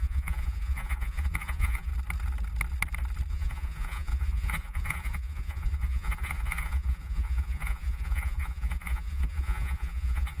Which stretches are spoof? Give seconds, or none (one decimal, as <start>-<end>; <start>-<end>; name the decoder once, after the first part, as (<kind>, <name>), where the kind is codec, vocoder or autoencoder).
0.0-1.9 (vocoder, Vocos); 3.3-10.4